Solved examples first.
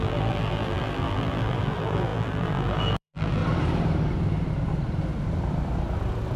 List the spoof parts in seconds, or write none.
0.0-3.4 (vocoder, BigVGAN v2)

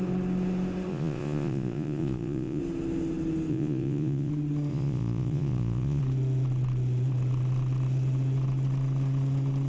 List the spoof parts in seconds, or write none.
0.9-2.6 (vocoder, Vocos); 3.5-4.3; 4.7-6.0